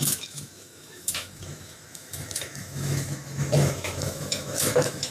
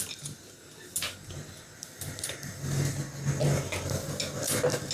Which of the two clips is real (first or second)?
second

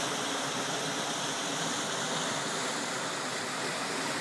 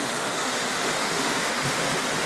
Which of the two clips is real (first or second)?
first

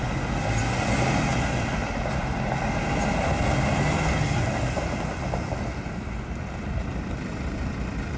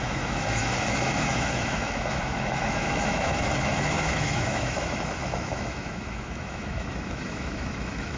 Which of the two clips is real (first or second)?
first